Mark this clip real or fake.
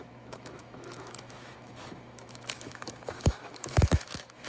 fake